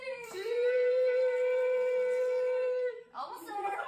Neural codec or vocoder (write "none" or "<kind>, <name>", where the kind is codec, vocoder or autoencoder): vocoder, BigVGAN v2